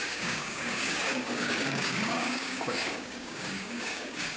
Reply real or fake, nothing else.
fake